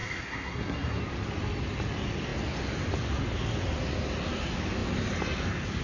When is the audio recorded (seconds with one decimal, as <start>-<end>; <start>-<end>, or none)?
1.0-5.8